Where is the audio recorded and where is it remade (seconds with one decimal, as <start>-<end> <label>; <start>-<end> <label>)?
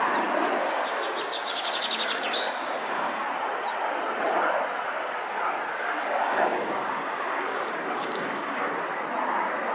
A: 0.0-0.6 recorded; 0.6-3.2 remade; 3.2-5.8 recorded; 5.8-8.6 remade; 8.6-9.7 recorded